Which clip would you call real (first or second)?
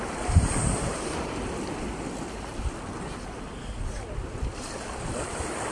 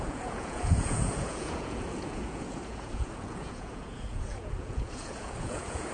first